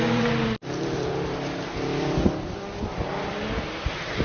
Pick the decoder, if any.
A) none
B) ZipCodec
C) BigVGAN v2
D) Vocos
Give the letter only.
A